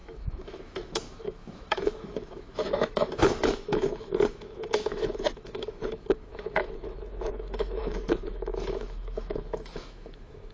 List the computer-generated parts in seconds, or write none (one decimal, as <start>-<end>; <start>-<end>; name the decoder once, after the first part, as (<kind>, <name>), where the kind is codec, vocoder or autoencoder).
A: 0.0-10.5 (autoencoder, DAC-VAE)